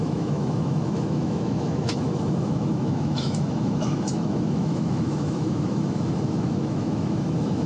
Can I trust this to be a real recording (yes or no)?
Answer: no